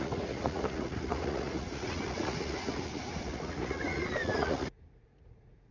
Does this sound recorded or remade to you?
remade